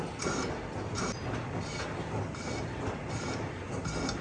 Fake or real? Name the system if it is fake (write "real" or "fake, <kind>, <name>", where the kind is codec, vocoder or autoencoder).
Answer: real